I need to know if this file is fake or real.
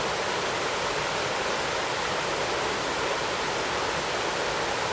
real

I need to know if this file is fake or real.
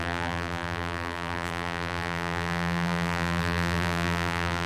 fake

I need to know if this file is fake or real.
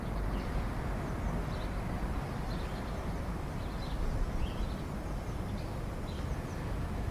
fake